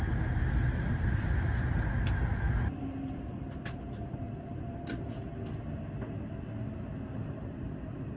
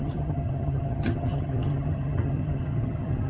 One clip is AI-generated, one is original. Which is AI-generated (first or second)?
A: second